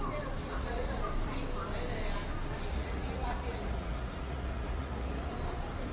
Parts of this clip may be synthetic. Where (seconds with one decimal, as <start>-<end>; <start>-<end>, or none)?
0.4-1.0; 2.7-5.3